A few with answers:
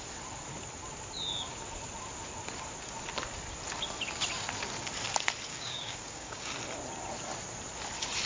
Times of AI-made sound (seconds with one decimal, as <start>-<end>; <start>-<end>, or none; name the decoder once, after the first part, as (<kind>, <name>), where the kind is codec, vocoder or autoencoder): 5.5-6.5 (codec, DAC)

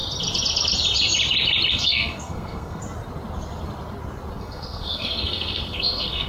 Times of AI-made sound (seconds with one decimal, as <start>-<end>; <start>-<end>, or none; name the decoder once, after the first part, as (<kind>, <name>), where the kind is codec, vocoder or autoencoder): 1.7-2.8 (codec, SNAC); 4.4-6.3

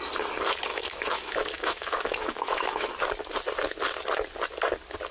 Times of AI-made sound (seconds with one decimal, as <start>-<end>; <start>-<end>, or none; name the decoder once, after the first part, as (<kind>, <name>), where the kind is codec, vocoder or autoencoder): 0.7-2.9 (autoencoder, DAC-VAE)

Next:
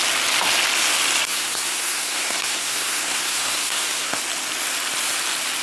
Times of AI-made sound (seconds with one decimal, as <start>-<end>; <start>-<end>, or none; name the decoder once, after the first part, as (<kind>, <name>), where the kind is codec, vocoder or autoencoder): 1.2-4.2 (codec, SNAC)

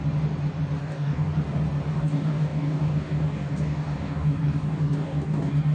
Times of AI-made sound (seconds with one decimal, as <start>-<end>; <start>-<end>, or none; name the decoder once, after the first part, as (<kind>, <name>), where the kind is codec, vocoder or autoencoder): 0.8-1.3 (codec, DAC); 1.9-5.7